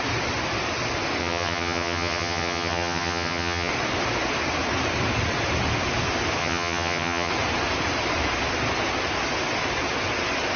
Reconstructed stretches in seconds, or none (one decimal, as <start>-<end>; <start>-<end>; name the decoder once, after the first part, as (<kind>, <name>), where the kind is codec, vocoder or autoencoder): 1.2-3.7 (vocoder, HiFi-GAN); 6.4-7.3